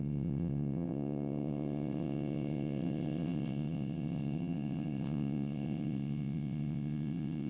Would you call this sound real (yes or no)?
no